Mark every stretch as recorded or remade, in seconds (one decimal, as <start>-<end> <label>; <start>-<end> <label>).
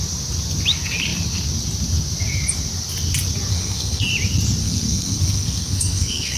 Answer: 0.0-3.5 recorded; 3.5-4.1 remade; 4.1-4.6 recorded; 4.6-6.4 remade